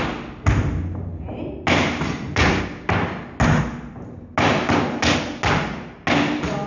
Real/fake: real